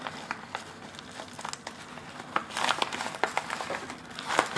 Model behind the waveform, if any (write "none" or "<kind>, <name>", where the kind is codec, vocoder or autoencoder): none